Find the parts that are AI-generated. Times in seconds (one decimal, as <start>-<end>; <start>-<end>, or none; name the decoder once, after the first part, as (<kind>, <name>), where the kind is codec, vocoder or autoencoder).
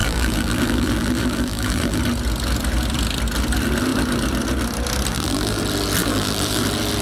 0.0-2.0 (vocoder, BigVGAN v2); 5.1-5.6; 6.0-6.6